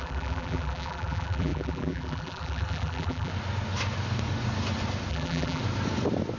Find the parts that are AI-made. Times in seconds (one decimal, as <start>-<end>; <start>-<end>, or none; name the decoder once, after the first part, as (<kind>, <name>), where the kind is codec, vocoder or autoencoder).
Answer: 0.0-3.3 (vocoder, BigVGAN v2); 5.1-5.6